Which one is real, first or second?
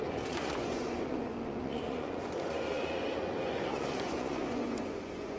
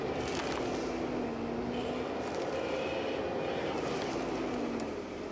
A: second